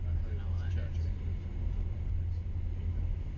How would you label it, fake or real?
real